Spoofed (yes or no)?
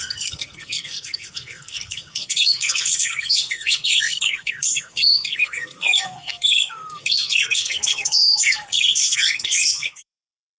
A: yes